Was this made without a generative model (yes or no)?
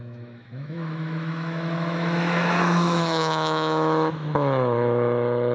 no